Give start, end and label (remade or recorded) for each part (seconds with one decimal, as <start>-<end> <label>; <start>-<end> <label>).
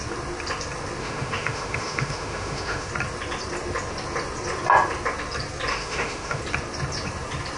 0.0-1.0 recorded; 1.0-2.9 remade; 2.9-5.7 recorded; 5.7-6.4 remade; 6.4-7.6 recorded